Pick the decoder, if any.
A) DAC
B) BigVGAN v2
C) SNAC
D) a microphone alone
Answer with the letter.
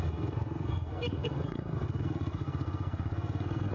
C